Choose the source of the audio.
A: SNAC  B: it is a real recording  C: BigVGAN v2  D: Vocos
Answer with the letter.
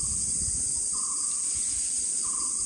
C